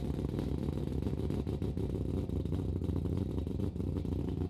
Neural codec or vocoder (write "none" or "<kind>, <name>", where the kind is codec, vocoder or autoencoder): vocoder, BigVGAN v2